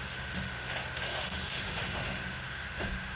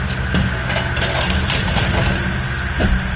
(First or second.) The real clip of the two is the second